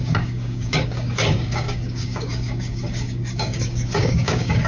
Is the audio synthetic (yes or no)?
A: yes